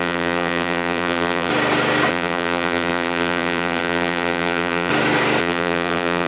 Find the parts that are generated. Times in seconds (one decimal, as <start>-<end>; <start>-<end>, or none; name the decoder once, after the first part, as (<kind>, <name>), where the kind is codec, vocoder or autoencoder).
0.0-1.5 (vocoder, BigVGAN v2); 2.1-4.9; 5.4-6.3